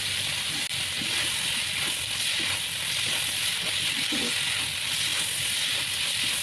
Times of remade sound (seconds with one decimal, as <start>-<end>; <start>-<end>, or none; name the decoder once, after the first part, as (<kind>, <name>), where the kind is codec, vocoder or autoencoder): none